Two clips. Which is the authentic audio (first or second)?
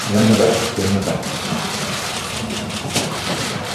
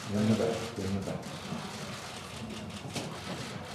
second